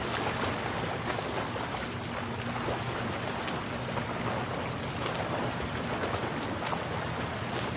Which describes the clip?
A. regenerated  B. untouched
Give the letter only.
B